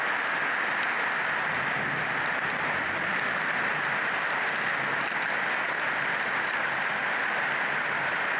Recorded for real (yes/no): yes